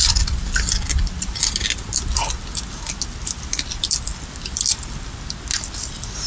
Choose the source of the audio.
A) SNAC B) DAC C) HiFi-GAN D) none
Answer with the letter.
D